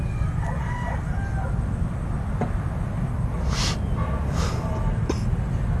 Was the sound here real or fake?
real